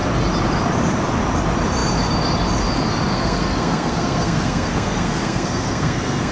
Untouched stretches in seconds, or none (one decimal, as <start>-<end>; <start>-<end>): 0.0-3.1